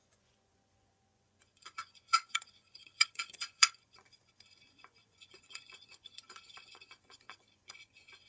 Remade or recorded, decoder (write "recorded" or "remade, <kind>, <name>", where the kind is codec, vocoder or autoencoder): remade, vocoder, Vocos